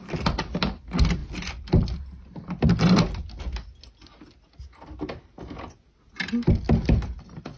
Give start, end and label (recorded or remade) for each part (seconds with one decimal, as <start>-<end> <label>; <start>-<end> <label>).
0.0-7.6 recorded